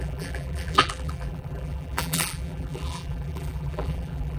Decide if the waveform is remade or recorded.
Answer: remade